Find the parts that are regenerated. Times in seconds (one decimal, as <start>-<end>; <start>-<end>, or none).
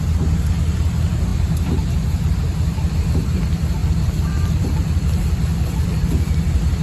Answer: 3.8-6.3